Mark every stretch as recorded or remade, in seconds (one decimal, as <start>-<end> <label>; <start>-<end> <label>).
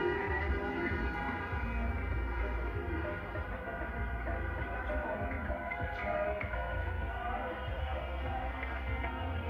0.0-0.5 remade; 0.5-5.5 recorded; 5.5-7.2 remade; 7.2-7.8 recorded; 7.8-9.5 remade